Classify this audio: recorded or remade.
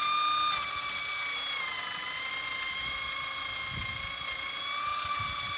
recorded